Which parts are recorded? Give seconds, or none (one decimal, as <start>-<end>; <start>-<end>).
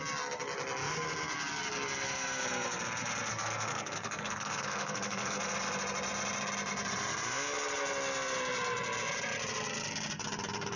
0.0-3.3; 5.4-10.8